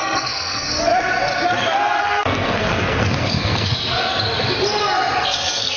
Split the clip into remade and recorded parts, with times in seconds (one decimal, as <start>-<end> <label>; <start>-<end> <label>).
0.0-0.9 remade; 0.9-2.0 recorded; 2.0-4.1 remade; 4.1-5.2 recorded; 5.2-5.8 remade